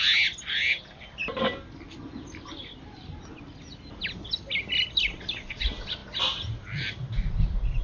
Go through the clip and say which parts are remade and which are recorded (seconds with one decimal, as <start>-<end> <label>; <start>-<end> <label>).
0.0-7.8 recorded